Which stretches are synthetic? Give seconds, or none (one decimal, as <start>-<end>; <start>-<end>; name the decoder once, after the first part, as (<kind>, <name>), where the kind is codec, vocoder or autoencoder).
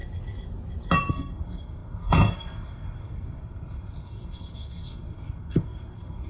1.1-6.3 (codec, SNAC)